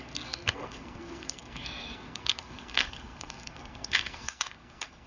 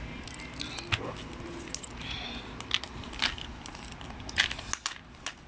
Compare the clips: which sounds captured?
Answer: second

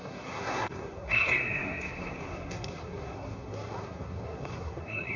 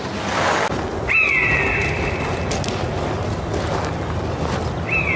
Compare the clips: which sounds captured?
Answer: second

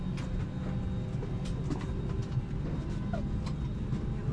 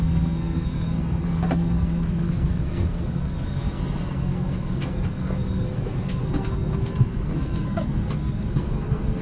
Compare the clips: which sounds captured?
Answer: first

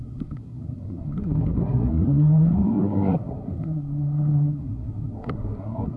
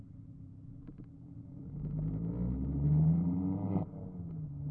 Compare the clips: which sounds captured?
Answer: second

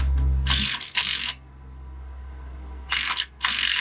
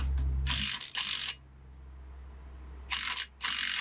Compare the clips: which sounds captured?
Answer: second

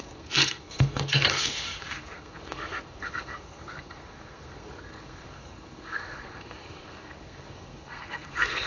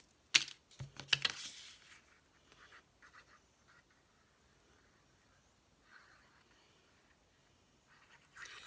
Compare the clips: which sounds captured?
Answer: second